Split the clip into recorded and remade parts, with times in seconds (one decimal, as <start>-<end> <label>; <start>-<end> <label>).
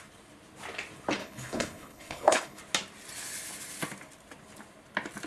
0.0-1.2 recorded; 1.2-2.6 remade; 2.6-5.3 recorded